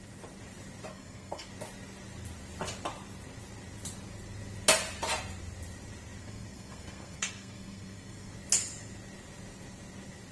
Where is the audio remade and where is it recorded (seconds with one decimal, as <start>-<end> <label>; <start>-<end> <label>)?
0.0-0.9 recorded; 0.9-1.5 remade; 1.5-6.2 recorded; 6.2-8.3 remade; 8.3-10.3 recorded